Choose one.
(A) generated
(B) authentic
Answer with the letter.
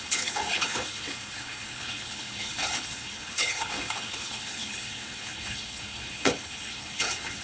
A